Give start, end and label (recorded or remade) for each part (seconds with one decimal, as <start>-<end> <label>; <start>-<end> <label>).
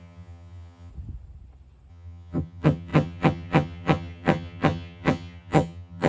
0.0-0.9 remade; 0.9-1.9 recorded; 1.9-6.1 remade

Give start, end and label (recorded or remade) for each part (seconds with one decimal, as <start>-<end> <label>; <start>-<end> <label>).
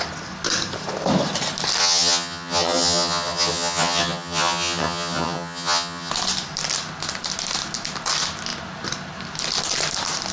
0.0-1.8 recorded; 1.8-6.1 remade; 6.1-10.3 recorded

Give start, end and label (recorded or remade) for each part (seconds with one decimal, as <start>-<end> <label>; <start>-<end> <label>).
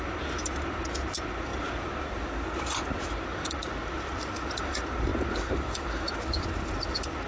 0.0-7.3 recorded